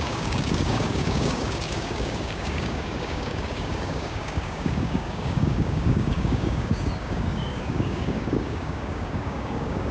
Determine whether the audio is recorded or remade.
remade